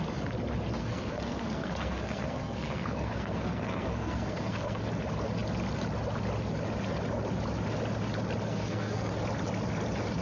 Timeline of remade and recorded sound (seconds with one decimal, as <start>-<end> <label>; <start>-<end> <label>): 0.0-0.8 recorded; 0.8-4.8 remade; 4.8-8.5 recorded; 8.5-9.1 remade; 9.1-10.2 recorded